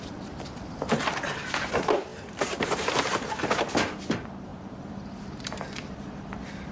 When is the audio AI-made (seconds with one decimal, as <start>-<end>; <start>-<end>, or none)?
2.1-3.3; 4.5-5.6

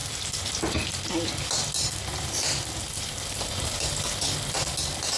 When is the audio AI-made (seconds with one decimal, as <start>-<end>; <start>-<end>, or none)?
0.0-1.3

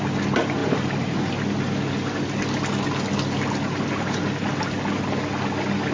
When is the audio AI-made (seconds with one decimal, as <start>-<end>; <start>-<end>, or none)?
0.6-1.3